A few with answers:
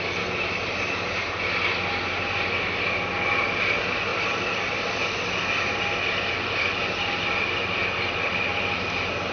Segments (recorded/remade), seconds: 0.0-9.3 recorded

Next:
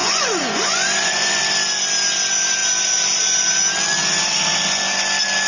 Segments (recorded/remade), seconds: 0.0-1.4 remade; 1.4-5.5 recorded